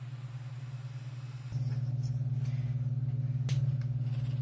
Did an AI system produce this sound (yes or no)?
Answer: no